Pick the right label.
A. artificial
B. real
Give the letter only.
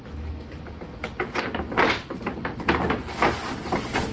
B